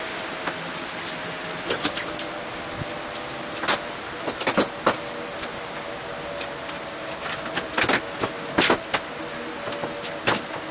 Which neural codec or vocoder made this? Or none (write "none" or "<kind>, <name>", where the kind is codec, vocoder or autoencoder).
none